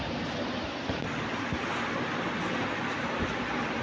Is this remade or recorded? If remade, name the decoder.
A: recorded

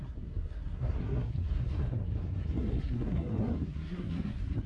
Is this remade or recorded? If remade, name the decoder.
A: remade, codec, SNAC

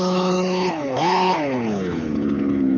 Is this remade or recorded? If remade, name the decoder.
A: remade, codec, HILCodec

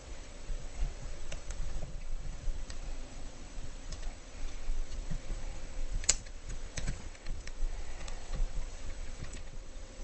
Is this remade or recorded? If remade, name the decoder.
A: remade, vocoder, WaveNeXt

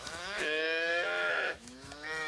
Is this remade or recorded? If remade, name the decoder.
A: remade, autoencoder, DAC-VAE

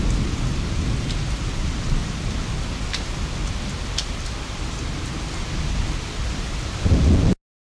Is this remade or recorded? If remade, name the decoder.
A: recorded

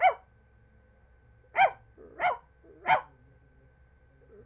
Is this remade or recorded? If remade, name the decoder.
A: recorded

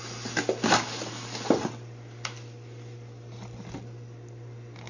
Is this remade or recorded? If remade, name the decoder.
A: recorded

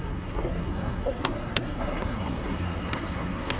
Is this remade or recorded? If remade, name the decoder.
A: remade, codec, SNAC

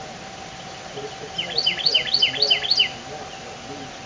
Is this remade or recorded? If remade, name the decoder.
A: recorded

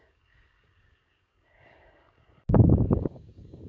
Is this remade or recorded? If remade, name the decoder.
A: remade, codec, DAC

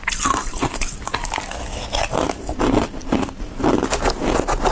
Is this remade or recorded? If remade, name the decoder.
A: recorded